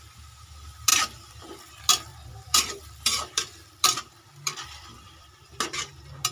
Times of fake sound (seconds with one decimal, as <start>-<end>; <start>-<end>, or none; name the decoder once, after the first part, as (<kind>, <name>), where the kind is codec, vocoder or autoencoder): 0.9-1.4 (vocoder, BigVGAN v2); 2.1-5.4